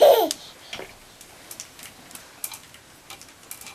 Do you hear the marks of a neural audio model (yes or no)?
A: no